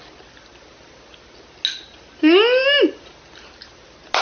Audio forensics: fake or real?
real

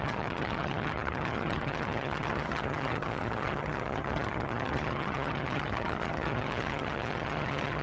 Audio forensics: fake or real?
fake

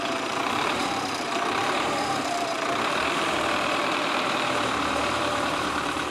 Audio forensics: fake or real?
fake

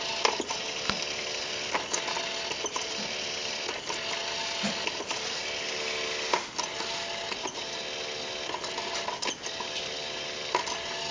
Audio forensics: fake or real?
real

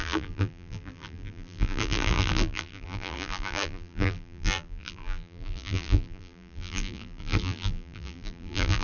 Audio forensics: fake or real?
fake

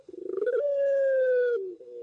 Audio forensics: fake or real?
fake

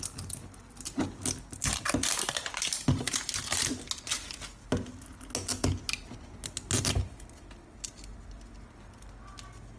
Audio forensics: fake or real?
real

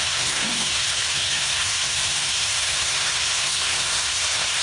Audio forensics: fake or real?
fake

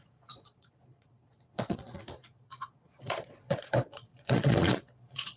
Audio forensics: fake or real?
fake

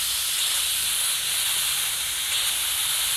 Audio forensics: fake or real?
real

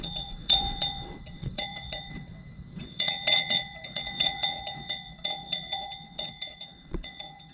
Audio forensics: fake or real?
fake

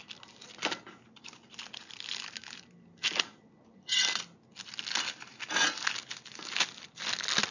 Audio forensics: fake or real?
real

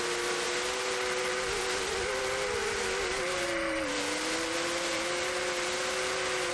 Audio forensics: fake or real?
real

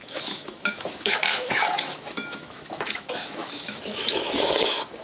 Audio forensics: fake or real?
fake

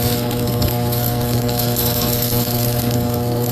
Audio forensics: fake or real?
fake